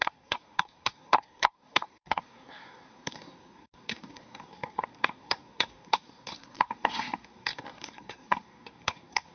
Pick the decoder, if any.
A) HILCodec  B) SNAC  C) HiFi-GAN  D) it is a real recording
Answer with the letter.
B